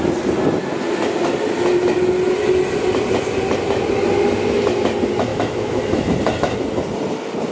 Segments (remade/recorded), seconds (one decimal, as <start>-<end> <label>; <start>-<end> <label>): 0.0-5.3 recorded; 5.3-5.8 remade; 5.8-7.5 recorded